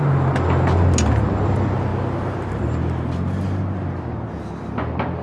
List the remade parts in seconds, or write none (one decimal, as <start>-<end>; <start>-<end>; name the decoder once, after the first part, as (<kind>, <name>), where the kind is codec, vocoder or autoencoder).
none